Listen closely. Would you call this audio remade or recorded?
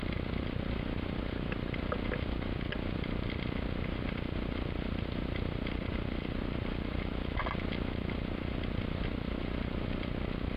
recorded